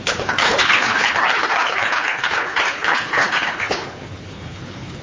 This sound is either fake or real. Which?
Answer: fake